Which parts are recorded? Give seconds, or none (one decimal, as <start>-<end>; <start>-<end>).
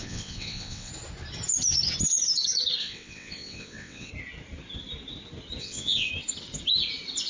0.9-2.8; 4.1-5.6; 6.1-7.3